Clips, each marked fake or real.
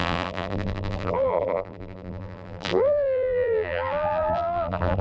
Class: fake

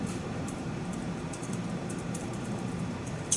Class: fake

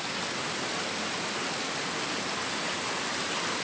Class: real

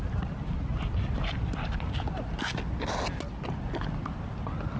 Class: real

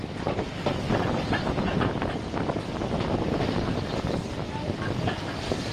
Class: real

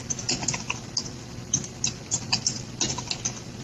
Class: real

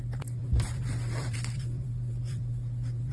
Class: fake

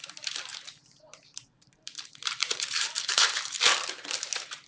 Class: fake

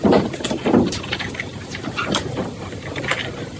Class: fake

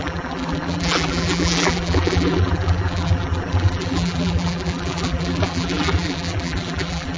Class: fake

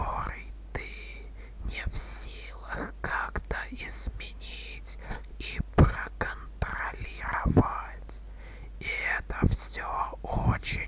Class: real